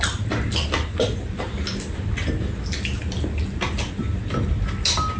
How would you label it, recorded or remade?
recorded